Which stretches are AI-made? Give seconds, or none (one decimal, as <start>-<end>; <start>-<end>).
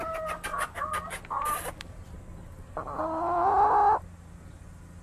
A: none